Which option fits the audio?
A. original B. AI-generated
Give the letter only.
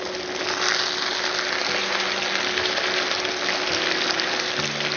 A